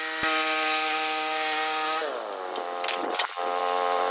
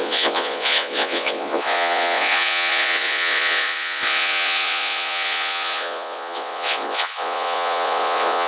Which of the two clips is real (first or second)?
first